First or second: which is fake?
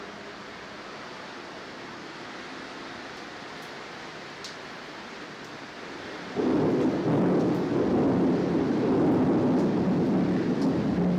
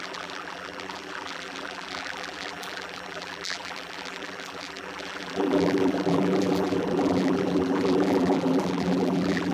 second